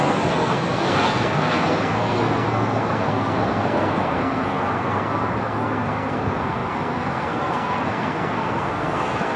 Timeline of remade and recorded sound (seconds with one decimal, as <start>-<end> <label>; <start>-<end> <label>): 0.0-9.4 remade